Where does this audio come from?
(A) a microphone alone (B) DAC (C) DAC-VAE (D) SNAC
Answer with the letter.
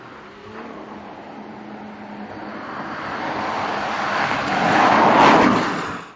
A